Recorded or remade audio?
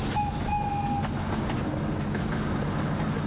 recorded